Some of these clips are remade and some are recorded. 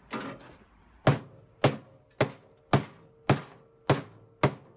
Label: recorded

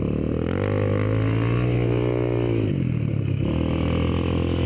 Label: recorded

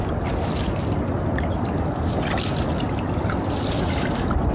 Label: recorded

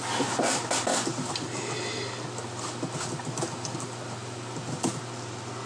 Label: recorded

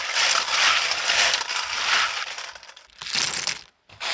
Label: recorded